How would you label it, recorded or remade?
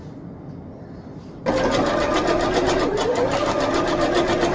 recorded